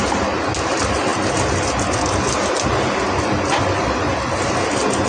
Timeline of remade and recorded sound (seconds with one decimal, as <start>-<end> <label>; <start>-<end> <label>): 0.0-5.1 recorded